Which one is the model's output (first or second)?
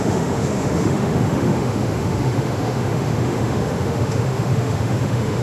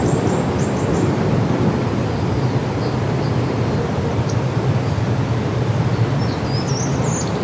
first